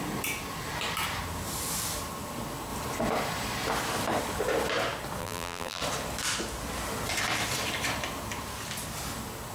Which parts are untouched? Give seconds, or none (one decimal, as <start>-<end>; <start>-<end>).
0.0-5.2; 5.8-9.5